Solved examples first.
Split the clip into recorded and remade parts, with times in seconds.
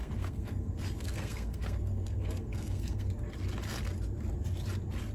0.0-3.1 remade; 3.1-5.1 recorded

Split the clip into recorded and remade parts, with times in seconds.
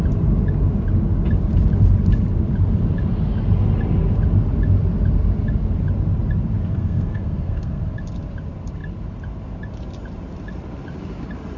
0.0-6.7 recorded; 6.7-7.8 remade; 7.8-11.6 recorded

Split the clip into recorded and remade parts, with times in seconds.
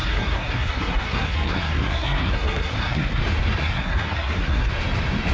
0.0-3.2 remade; 3.2-3.6 recorded; 3.6-4.7 remade; 4.7-5.3 recorded